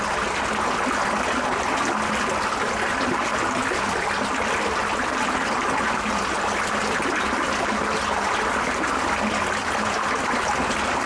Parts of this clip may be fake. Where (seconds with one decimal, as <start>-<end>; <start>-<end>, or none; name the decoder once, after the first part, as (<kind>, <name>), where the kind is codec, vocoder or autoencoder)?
none